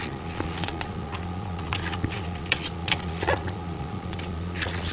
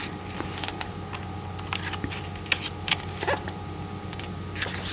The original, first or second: second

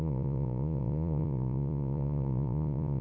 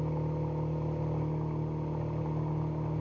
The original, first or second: second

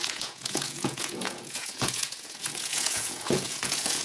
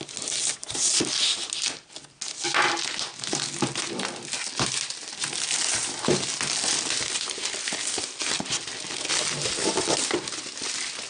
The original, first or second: second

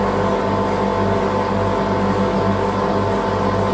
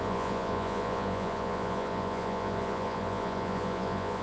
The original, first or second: first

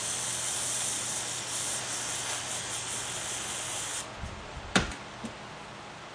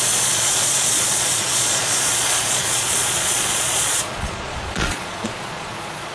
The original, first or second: first